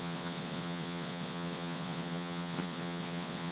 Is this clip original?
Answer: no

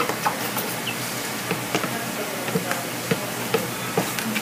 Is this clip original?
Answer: yes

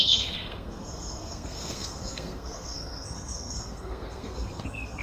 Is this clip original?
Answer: no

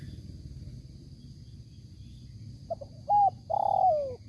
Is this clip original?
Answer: yes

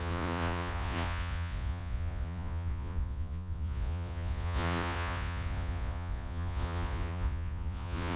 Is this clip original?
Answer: no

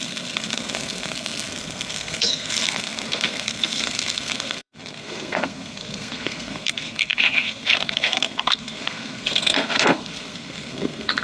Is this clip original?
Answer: no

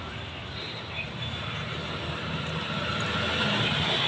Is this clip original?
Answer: yes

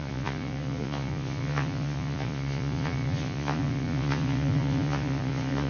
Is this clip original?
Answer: no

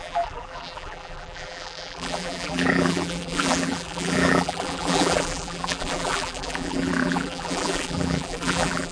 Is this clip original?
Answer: no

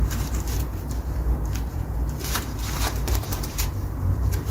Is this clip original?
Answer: no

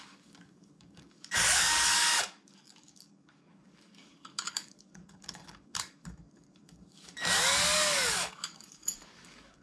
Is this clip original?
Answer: no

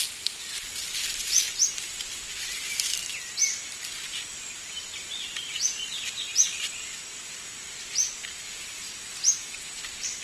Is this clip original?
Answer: yes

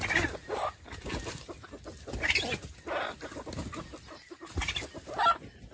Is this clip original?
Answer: yes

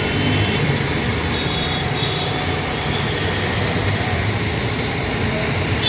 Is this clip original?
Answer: no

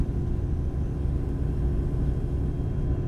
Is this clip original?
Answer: yes